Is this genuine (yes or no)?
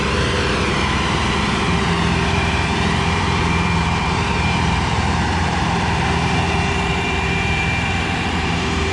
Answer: no